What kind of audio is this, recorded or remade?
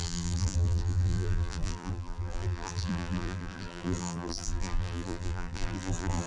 remade